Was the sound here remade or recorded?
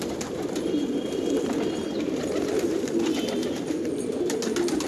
remade